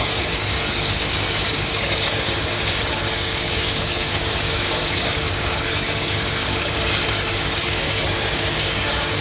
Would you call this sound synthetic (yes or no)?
yes